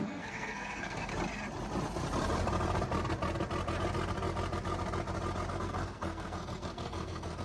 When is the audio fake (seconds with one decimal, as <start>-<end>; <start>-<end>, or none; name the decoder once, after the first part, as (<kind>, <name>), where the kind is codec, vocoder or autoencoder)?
0.0-1.1 (codec, SNAC); 5.5-7.4

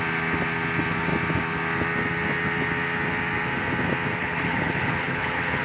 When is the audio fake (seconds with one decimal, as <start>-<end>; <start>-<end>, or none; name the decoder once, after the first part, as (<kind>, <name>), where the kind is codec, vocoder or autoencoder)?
4.2-5.6 (codec, HILCodec)

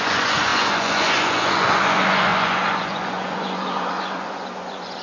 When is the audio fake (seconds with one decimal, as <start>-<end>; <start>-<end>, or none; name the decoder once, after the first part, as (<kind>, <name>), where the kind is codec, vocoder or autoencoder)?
0.0-5.0 (vocoder, Vocos)